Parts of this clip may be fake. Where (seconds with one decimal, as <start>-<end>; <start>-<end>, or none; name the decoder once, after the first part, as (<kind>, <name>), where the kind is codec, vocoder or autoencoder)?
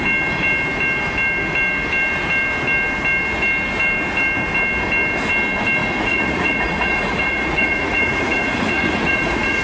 5.8-9.6 (vocoder, Vocos)